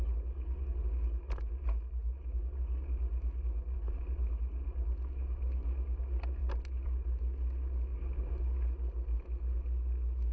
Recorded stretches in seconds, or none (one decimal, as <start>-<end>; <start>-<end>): 0.0-10.3